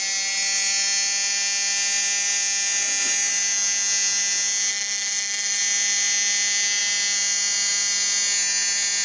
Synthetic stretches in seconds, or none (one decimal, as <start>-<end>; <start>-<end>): 4.7-5.6